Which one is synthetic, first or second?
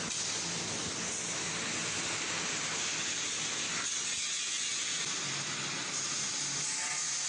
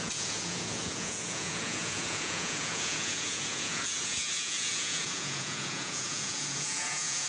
second